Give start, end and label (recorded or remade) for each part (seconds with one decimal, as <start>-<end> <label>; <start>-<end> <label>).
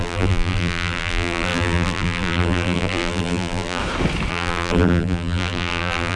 0.0-3.8 remade; 3.8-4.3 recorded; 4.3-6.2 remade